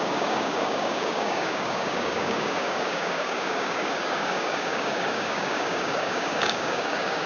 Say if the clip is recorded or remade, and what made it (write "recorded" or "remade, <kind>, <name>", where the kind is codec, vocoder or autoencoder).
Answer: remade, codec, DAC